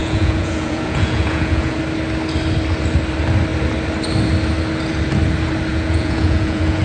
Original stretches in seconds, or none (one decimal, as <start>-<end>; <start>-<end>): 1.8-5.7